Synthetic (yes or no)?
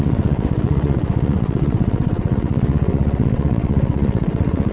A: yes